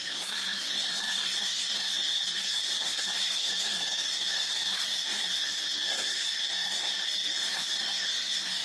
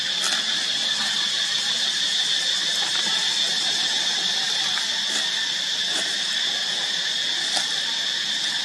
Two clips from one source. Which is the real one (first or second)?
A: second